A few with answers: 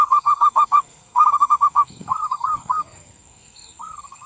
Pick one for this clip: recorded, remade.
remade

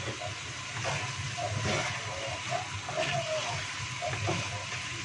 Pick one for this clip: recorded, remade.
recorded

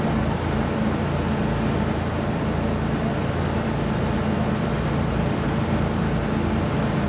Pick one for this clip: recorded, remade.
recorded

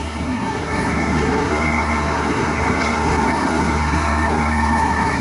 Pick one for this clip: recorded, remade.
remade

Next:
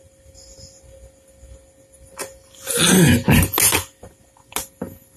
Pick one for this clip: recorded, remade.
recorded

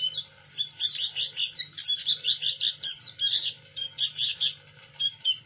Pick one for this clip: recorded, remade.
recorded